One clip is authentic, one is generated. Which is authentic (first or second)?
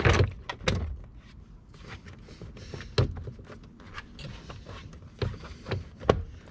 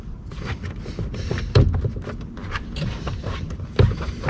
first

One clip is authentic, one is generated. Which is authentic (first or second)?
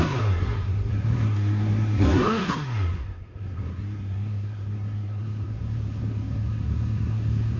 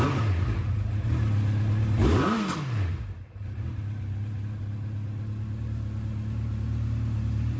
second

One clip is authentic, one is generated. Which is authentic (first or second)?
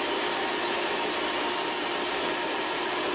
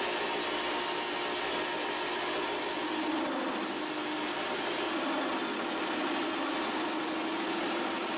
second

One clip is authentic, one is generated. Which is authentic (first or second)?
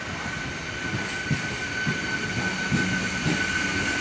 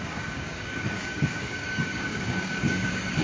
first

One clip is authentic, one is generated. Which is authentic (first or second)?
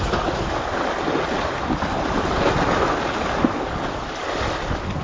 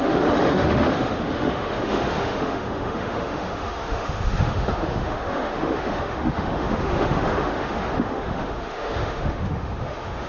first